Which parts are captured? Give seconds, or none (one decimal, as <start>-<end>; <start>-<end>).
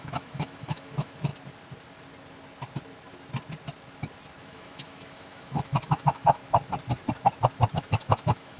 1.3-4.4; 6.4-7.7